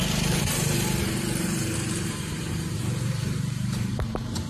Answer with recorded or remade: remade